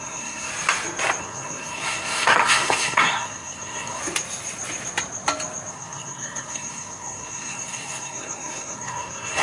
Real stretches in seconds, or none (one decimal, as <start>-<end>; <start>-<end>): 0.5-1.2; 4.0-5.7